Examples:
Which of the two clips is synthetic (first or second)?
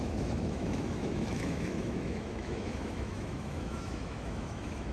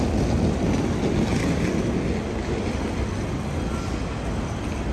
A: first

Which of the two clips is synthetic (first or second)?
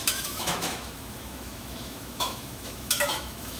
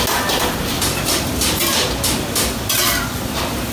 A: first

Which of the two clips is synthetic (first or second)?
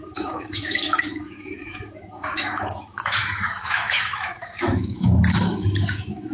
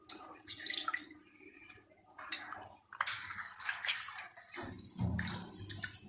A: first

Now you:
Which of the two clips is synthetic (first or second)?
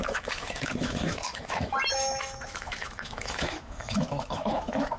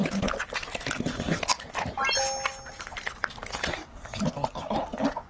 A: first